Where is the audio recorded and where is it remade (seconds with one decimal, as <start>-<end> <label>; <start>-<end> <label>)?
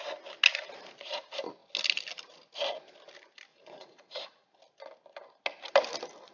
0.0-3.5 recorded; 3.5-4.6 remade; 4.6-6.3 recorded